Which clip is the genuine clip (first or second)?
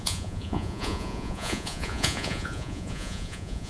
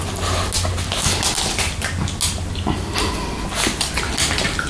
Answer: second